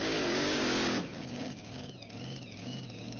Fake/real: fake